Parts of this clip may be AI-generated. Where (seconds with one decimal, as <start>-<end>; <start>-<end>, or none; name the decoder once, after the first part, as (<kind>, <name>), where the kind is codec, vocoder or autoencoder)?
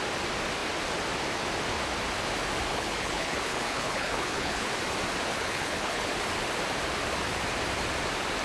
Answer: 2.7-4.7 (codec, HILCodec); 5.3-6.1